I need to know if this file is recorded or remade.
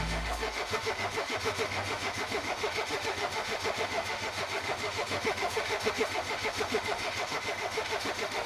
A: remade